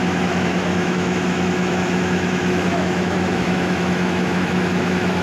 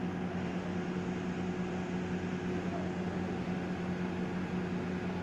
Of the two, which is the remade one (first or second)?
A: first